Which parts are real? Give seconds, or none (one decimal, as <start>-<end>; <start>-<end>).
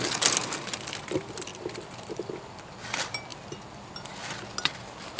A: 0.0-5.2